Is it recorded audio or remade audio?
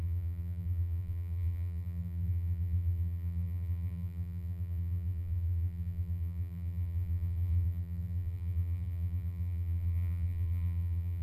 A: remade